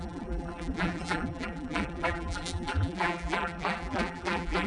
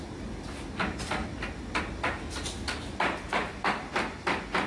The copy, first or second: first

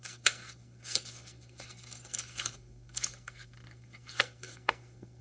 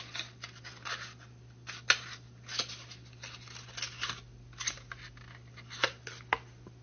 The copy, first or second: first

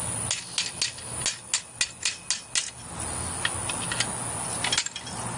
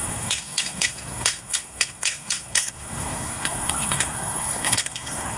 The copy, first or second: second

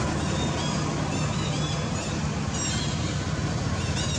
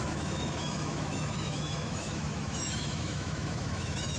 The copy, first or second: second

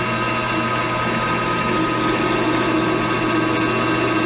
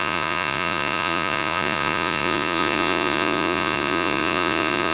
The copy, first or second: second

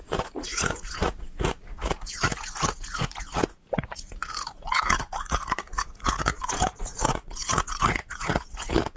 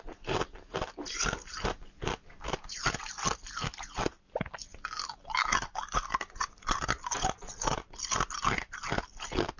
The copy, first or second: first